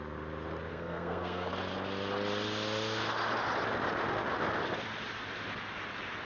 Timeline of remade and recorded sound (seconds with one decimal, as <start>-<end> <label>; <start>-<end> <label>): 0.0-0.7 recorded; 0.7-1.5 remade; 1.5-6.2 recorded